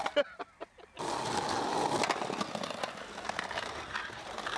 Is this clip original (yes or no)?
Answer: yes